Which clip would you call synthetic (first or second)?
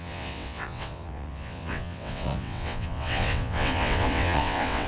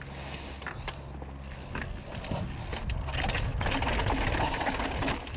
first